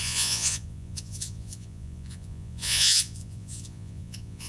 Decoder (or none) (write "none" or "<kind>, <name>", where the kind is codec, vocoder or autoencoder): vocoder, Vocos